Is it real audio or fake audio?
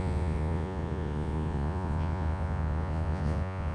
fake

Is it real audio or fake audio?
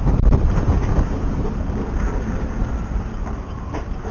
real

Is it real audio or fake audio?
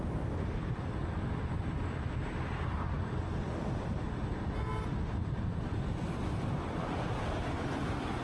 real